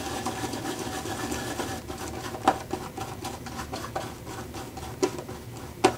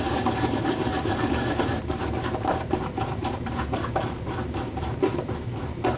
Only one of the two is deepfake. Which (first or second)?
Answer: second